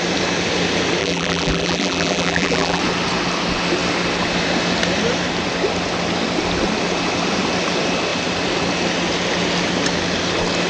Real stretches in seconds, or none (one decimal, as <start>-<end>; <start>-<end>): 0.0-1.0; 2.8-10.7